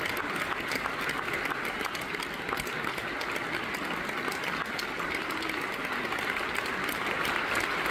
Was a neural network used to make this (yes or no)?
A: no